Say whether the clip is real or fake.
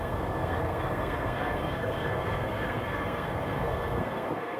fake